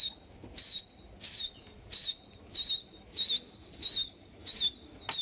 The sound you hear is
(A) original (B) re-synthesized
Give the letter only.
A